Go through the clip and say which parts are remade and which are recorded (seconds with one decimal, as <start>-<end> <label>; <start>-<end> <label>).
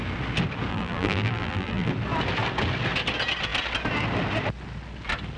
0.0-0.7 recorded; 0.7-1.9 remade; 1.9-5.4 recorded